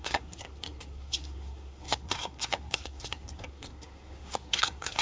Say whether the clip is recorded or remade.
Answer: remade